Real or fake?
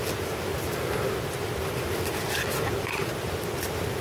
real